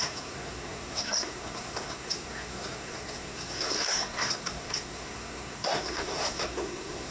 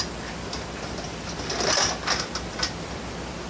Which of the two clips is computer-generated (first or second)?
first